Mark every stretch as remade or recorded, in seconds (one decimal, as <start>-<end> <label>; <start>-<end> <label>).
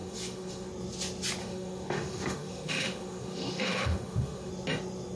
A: 0.0-0.7 remade; 0.7-1.4 recorded; 1.4-4.5 remade; 4.5-5.2 recorded